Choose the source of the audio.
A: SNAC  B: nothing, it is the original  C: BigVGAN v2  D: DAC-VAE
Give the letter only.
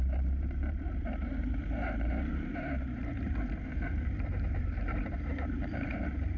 C